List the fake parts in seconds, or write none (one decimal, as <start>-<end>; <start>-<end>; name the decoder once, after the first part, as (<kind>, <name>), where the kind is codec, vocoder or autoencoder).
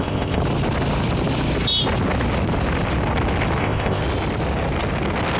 0.0-0.4 (codec, ZipCodec); 3.6-4.0